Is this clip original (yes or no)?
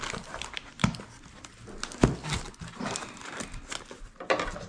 yes